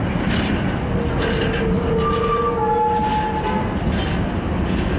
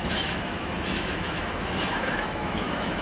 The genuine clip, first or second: first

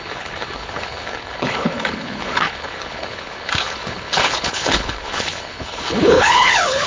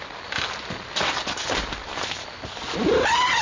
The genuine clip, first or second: second